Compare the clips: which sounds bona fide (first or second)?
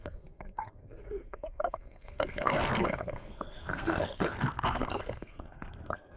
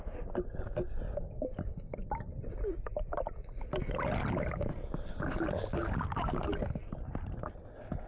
second